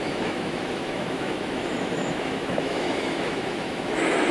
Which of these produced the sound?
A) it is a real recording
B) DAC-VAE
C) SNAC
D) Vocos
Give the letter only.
B